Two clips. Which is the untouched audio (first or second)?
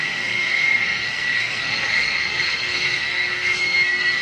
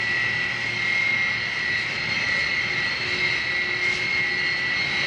second